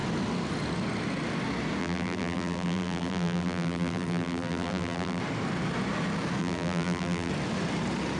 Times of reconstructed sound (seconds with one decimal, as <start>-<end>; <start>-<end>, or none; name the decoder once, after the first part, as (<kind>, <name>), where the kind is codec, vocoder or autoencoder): 1.8-5.2 (vocoder, BigVGAN v2); 6.4-7.3